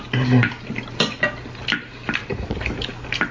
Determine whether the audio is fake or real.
real